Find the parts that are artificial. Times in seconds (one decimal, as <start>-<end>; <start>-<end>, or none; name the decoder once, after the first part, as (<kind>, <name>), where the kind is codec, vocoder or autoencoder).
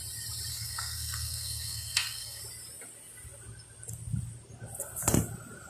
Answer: 0.5-2.4 (codec, SNAC)